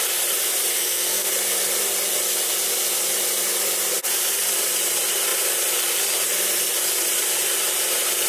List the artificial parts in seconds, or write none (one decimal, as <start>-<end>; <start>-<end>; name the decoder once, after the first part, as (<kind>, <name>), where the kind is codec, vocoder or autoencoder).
0.7-1.3 (codec, SNAC)